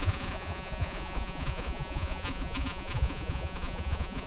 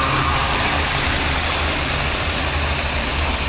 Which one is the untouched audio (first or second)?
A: second